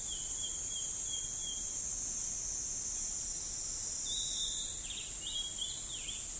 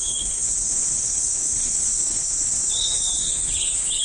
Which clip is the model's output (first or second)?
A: second